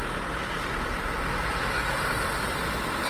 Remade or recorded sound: recorded